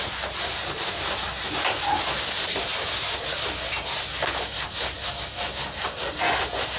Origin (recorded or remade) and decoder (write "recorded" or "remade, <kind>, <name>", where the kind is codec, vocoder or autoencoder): recorded